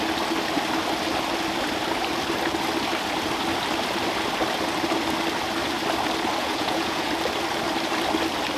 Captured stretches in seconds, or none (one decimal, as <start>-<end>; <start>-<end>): 0.0-6.4; 7.1-8.6